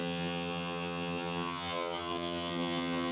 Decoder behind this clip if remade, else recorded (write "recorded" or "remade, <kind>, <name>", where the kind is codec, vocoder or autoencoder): remade, vocoder, HiFi-GAN